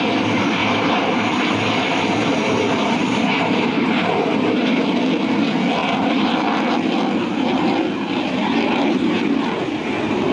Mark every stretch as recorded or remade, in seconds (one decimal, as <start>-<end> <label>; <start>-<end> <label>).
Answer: 0.0-0.6 recorded; 0.6-4.9 remade; 4.9-5.8 recorded; 5.8-6.3 remade; 6.3-8.4 recorded; 8.4-9.2 remade; 9.2-10.3 recorded